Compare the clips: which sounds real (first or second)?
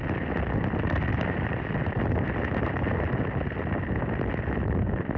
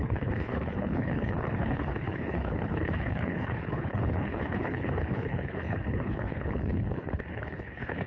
first